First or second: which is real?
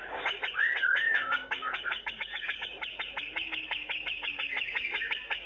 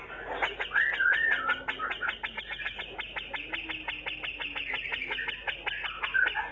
second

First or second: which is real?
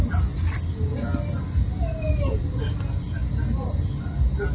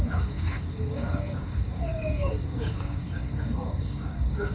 first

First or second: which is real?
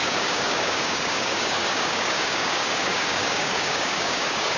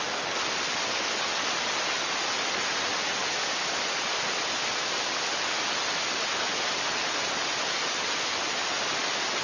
second